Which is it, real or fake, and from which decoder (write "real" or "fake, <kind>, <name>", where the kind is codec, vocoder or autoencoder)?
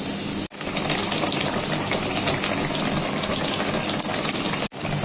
real